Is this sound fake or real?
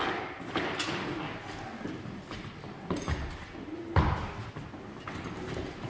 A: real